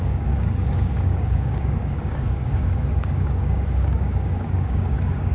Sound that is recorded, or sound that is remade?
remade